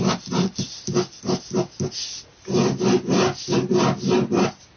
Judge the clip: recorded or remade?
recorded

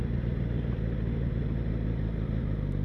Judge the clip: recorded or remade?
recorded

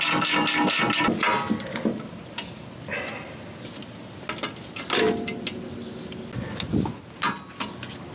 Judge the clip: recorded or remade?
recorded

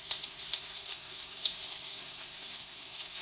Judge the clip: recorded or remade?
remade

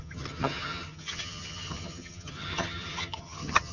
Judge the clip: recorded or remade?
remade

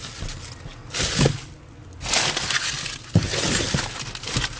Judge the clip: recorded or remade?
recorded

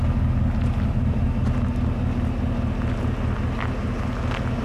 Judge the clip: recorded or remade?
recorded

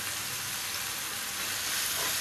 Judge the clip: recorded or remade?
recorded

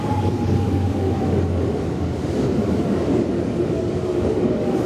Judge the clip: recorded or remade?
remade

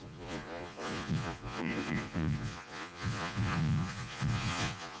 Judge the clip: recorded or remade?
remade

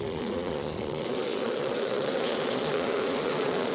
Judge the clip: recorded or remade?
remade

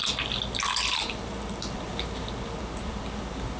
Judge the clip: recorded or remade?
recorded